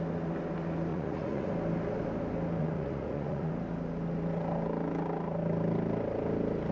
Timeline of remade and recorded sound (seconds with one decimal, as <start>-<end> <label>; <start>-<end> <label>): 0.0-0.9 recorded; 0.9-1.5 remade; 1.5-2.6 recorded; 2.6-3.5 remade; 3.5-6.7 recorded